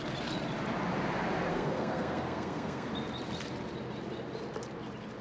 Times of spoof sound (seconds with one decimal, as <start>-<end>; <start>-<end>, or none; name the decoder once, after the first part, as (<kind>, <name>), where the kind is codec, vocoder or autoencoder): 1.5-2.9 (codec, SNAC)